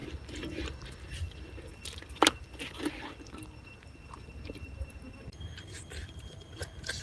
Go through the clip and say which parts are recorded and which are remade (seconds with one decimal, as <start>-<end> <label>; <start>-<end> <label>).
0.0-7.0 recorded

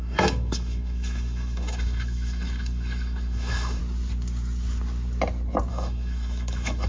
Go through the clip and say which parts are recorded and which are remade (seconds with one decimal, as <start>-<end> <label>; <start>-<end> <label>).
0.0-3.8 remade; 3.8-5.7 recorded; 5.7-6.9 remade

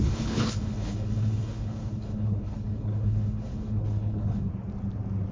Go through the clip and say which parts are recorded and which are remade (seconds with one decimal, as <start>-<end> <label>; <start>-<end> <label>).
0.0-4.5 remade; 4.5-5.3 recorded